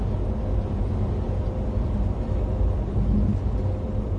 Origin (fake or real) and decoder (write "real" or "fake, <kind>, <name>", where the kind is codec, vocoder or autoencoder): real